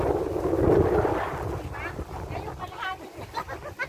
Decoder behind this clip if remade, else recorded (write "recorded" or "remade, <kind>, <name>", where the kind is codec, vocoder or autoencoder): recorded